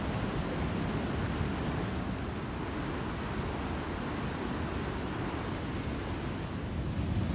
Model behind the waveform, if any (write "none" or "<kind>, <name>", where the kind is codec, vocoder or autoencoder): none